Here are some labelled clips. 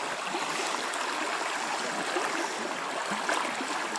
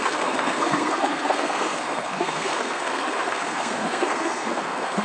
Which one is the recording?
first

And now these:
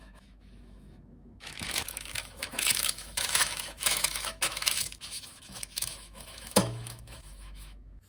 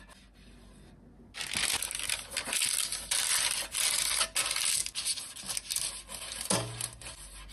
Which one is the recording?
second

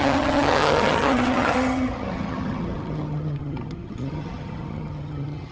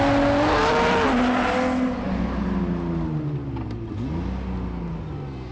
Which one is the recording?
second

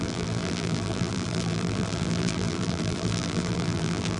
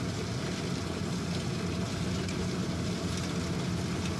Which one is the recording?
second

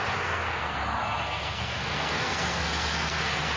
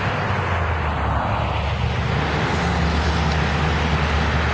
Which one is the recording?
second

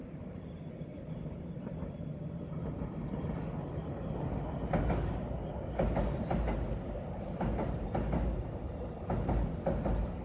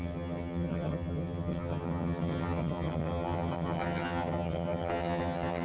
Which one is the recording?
first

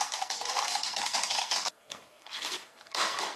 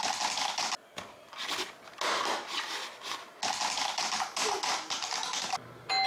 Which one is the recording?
second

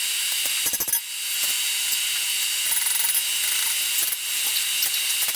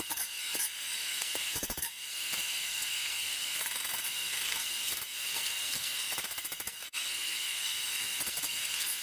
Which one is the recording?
first